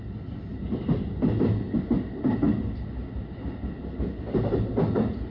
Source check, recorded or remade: recorded